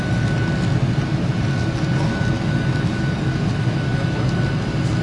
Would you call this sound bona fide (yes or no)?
yes